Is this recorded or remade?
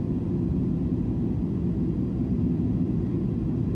recorded